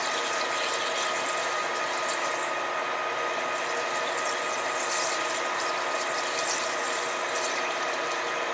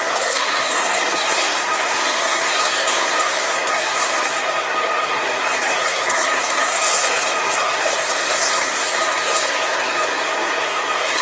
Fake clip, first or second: second